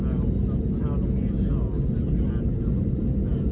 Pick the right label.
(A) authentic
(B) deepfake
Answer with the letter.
A